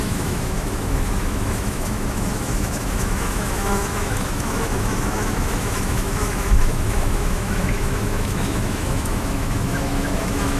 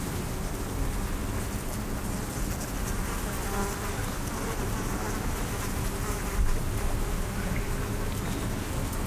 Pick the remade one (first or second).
first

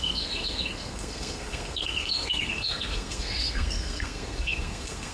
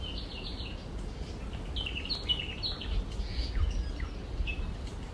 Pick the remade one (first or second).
first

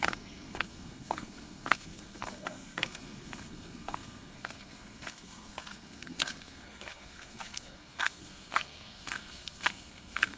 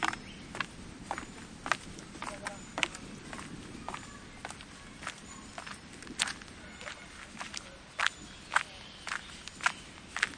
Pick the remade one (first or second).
first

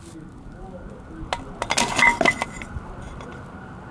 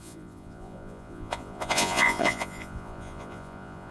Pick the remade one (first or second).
second